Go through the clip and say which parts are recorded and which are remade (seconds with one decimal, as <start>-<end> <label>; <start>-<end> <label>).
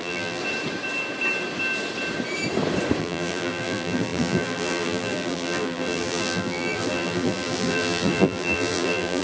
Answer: 0.0-0.4 remade; 0.4-3.0 recorded; 3.0-9.2 remade